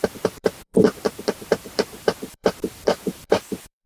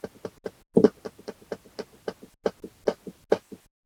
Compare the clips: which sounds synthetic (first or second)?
first